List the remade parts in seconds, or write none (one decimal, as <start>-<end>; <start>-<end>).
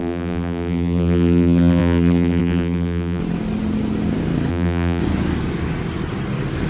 0.0-3.2; 4.5-5.0